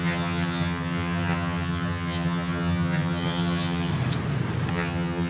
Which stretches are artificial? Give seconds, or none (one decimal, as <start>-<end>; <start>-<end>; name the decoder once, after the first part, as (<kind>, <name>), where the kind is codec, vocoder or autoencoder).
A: 0.0-3.9 (vocoder, HiFi-GAN); 4.7-5.3